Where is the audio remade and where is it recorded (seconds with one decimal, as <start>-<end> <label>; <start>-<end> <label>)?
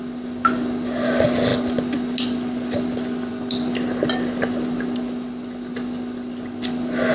0.0-7.1 recorded